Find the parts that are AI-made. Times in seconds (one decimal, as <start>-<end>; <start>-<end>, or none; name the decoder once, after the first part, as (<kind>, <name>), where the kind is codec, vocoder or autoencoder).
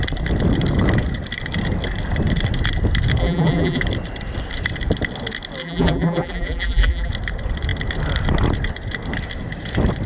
3.2-3.8 (vocoder, BigVGAN v2); 5.6-7.1